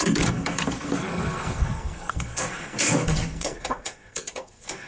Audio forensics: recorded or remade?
remade